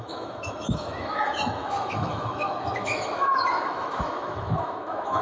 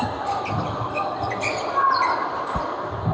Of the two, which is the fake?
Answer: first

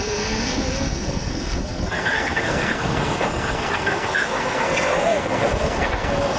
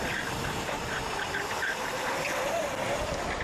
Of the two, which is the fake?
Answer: first